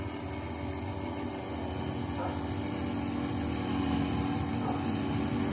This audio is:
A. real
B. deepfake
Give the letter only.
A